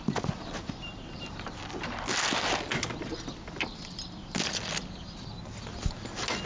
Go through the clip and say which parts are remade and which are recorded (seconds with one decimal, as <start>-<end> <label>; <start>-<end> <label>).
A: 0.0-6.5 recorded